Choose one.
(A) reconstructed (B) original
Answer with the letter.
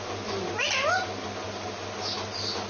B